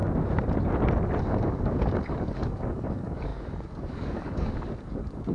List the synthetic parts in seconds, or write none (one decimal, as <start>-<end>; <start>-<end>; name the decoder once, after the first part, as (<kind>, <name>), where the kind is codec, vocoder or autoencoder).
1.2-5.3 (codec, DAC)